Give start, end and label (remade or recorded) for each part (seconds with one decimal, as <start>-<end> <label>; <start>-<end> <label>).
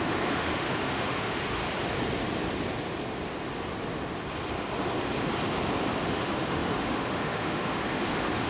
0.0-1.6 remade; 1.6-6.1 recorded; 6.1-8.5 remade